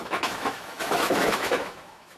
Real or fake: fake